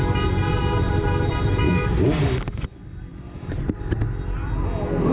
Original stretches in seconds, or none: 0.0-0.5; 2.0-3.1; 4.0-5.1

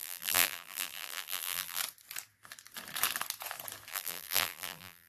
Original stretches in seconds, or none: 1.8-3.9